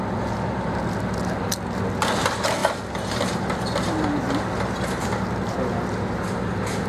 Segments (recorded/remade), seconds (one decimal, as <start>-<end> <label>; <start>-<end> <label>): 0.0-6.9 recorded